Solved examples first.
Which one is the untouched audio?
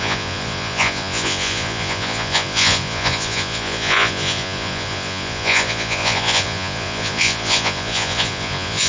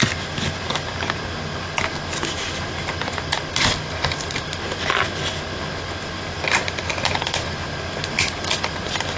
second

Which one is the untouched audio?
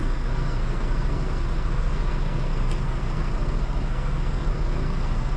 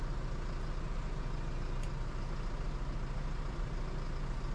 second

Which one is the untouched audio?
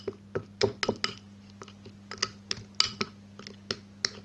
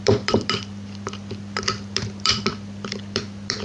first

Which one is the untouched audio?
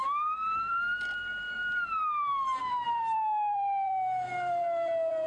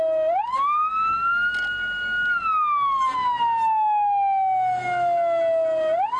second